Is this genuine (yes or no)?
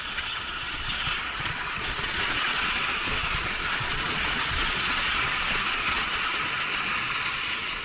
no